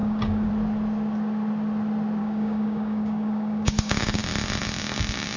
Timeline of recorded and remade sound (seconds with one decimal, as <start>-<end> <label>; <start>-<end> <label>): 0.0-0.5 remade; 0.5-2.2 recorded; 2.2-4.2 remade; 4.2-5.4 recorded